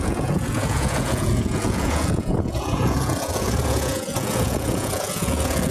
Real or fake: fake